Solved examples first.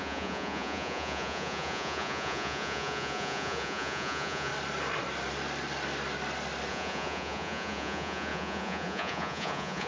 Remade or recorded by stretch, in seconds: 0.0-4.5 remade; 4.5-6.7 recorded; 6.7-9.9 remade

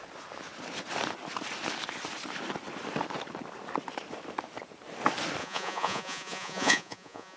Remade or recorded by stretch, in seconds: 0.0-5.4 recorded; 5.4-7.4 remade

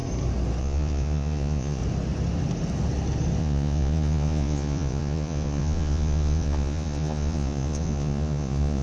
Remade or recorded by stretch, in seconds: 0.0-0.6 recorded; 0.6-1.8 remade; 1.8-3.4 recorded; 3.4-8.8 remade

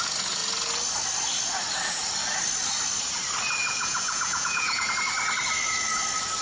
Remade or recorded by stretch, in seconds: 0.0-3.6 recorded; 3.6-4.9 remade; 4.9-6.4 recorded

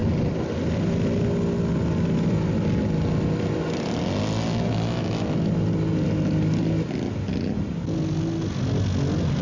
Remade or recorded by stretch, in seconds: 0.0-9.4 recorded